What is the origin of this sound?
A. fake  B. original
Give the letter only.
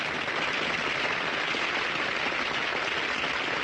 B